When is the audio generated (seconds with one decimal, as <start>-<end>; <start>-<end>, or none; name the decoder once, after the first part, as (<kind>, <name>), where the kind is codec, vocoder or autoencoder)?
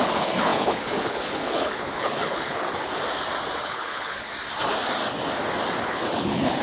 0.0-2.9 (codec, HILCodec); 3.6-4.3; 5.8-6.6